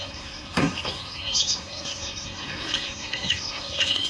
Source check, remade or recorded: remade